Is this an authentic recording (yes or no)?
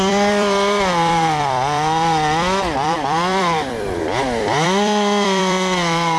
no